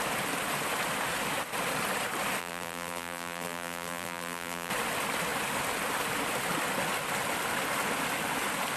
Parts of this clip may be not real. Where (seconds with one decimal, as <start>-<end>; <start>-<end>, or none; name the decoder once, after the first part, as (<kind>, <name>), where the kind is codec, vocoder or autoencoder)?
2.4-4.7 (vocoder, BigVGAN v2)